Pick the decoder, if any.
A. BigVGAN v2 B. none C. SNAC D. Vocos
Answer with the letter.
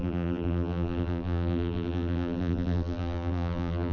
A